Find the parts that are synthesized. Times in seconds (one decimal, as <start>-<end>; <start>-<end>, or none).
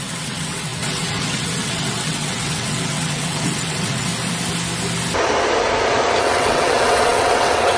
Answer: 0.0-4.1; 6.2-7.8